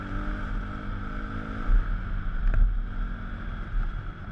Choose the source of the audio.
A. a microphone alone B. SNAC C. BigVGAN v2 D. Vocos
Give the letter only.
A